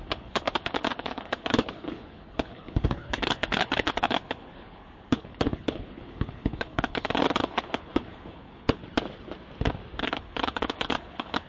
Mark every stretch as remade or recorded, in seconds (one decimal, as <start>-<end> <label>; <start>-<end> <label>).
0.0-8.8 remade; 8.8-10.0 recorded; 10.0-11.5 remade